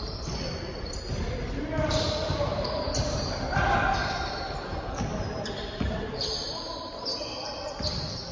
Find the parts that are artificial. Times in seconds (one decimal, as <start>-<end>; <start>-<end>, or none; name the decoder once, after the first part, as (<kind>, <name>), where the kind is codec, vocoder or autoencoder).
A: 0.0-8.3 (vocoder, BigVGAN v2)